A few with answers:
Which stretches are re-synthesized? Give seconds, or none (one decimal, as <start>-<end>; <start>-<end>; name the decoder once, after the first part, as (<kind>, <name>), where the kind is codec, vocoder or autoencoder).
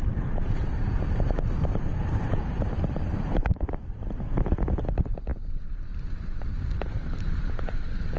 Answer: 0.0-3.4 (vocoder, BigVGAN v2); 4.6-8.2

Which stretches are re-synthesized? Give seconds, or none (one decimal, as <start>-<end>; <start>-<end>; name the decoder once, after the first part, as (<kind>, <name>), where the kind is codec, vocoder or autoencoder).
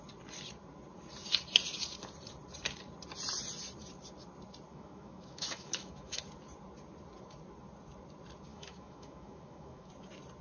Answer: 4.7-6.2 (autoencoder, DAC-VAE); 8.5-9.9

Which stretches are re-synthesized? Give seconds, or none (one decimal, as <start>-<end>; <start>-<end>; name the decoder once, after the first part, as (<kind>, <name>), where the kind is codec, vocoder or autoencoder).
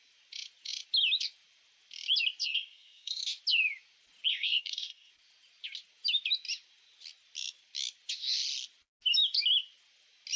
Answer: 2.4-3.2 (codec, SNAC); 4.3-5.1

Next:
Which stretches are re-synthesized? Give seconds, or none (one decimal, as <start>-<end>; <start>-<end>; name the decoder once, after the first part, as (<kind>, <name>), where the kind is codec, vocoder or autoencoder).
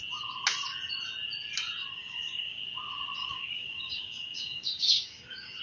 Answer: 2.0-2.6 (codec, DAC); 3.2-5.6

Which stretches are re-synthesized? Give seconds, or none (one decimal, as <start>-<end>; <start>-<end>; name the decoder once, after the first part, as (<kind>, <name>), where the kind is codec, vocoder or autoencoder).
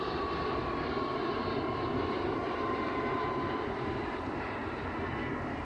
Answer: 0.0-4.6 (vocoder, BigVGAN v2)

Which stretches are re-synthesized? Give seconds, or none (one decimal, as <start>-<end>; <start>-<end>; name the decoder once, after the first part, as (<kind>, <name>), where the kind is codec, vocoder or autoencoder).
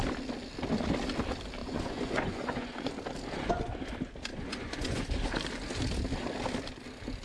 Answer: 1.6-2.9 (vocoder, Vocos); 4.3-5.1